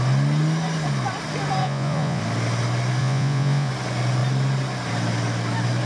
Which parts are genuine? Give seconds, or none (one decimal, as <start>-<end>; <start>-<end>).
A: 0.0-1.6; 2.2-3.0; 3.7-5.9